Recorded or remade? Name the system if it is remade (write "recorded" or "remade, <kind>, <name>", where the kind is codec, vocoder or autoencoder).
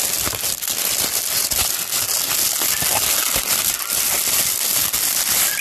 recorded